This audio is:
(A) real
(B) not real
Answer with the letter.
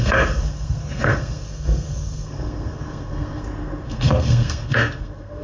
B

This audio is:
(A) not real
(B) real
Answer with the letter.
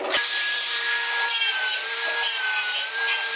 A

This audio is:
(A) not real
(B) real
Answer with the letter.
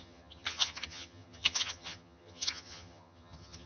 A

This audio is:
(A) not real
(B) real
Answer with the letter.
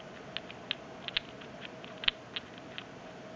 B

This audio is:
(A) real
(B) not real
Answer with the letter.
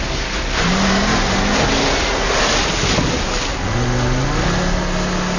A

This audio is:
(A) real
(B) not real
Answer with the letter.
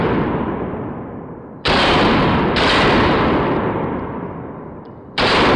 B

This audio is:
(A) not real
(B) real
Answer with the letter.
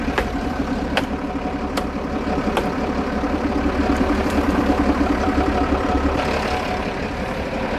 A